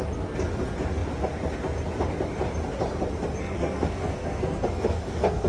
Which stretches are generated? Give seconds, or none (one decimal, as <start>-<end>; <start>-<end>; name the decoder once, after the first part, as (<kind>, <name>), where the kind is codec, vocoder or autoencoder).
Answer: 3.4-5.5 (codec, SNAC)